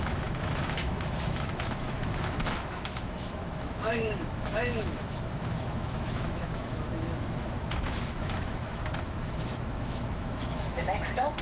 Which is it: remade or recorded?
remade